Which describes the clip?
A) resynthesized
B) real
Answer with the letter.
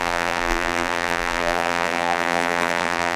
A